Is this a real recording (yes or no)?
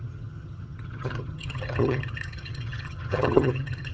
no